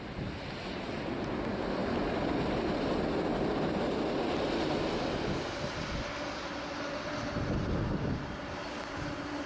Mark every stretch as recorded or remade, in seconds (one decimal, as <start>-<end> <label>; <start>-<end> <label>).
0.0-9.5 recorded